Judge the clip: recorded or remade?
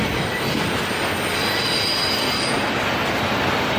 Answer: recorded